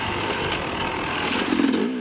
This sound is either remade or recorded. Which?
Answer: recorded